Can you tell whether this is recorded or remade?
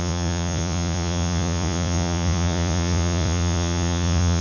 remade